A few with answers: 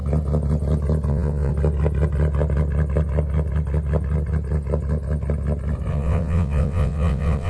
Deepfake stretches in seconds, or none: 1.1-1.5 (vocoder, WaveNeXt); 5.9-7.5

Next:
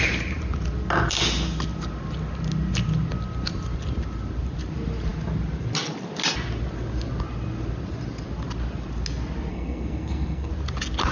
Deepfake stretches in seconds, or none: 9.5-10.5 (codec, SNAC)

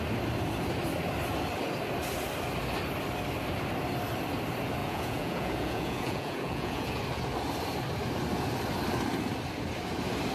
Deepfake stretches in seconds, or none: 4.8-7.0 (vocoder, Vocos)